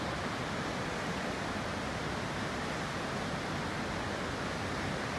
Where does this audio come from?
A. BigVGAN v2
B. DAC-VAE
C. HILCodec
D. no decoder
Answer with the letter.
D